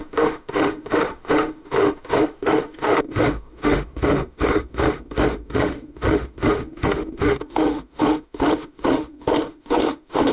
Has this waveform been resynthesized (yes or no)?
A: yes